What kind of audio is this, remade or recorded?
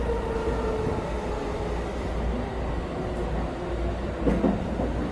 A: recorded